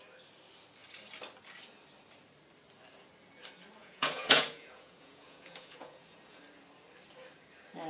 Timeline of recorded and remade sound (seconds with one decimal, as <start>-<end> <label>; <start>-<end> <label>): 0.0-3.8 recorded; 3.8-6.4 remade; 6.4-7.9 recorded